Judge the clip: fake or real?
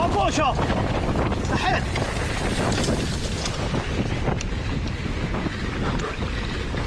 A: real